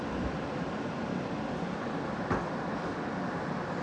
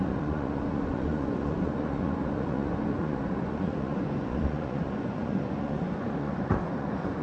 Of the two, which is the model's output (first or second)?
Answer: second